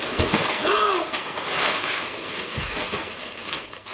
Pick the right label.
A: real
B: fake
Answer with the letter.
B